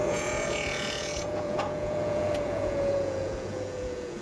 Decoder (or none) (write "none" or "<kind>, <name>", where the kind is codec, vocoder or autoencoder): vocoder, Vocos